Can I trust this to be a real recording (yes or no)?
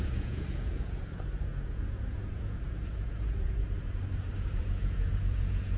no